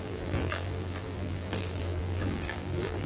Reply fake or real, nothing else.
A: fake